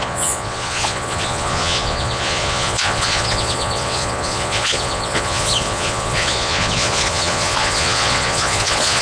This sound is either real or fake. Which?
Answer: fake